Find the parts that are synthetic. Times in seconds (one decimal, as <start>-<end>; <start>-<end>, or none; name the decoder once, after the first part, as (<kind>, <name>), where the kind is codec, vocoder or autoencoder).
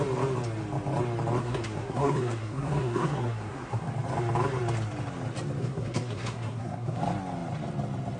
1.4-3.9 (codec, SNAC); 5.6-7.0